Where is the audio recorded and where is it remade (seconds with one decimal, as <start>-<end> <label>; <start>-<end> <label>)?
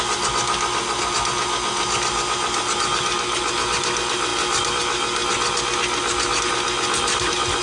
0.0-7.6 recorded